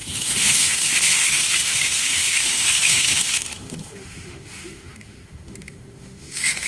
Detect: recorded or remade remade